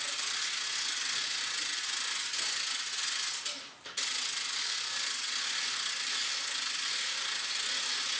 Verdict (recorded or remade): recorded